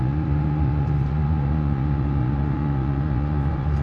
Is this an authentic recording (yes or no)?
no